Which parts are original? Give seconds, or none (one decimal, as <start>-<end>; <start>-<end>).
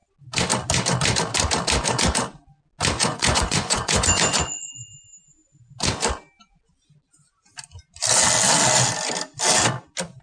0.0-3.0; 4.7-10.2